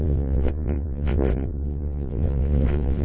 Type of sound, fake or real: fake